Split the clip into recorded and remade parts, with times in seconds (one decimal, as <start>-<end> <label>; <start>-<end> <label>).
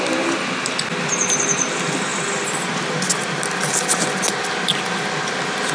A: 0.0-5.7 recorded